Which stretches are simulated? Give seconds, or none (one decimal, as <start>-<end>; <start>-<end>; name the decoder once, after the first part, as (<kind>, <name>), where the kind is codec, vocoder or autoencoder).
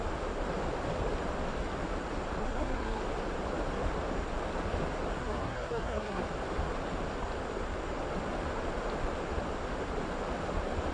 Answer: 2.4-3.0 (codec, SNAC); 5.2-6.2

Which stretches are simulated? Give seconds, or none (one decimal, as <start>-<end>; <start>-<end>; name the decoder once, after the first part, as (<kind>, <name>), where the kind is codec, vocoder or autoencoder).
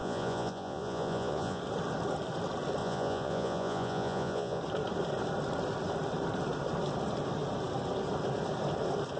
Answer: 0.0-1.6 (vocoder, Vocos); 2.8-4.6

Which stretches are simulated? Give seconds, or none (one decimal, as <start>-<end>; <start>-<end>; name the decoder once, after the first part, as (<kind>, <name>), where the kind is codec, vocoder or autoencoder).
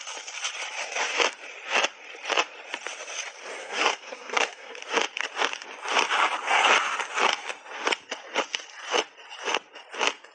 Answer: 3.6-4.8 (codec, SNAC)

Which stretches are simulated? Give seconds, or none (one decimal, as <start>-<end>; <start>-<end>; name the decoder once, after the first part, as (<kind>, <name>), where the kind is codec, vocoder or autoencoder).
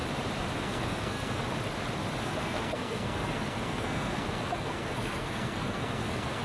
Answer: 0.6-1.4 (codec, SNAC); 2.2-6.4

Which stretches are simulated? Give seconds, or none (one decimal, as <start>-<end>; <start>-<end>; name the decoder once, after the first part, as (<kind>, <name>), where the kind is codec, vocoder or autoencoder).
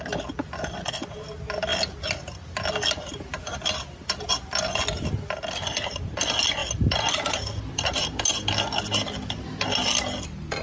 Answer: none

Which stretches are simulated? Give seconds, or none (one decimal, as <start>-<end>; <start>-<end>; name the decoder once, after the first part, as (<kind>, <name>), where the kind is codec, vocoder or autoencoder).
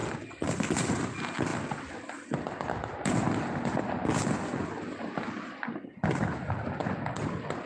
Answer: none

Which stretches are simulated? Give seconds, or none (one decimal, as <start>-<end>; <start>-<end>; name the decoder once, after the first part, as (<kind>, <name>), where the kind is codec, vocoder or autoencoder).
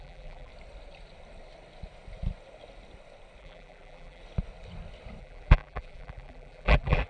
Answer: 0.0-0.5 (vocoder, BigVGAN v2); 3.4-4.2; 5.2-7.1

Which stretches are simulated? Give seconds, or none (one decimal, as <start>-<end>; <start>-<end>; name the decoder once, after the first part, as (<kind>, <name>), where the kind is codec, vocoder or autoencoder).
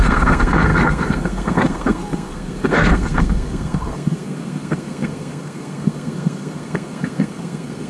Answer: 0.0-7.9 (codec, SNAC)